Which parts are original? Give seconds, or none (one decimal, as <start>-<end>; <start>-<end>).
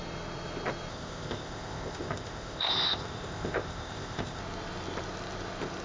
0.0-0.9; 4.4-5.8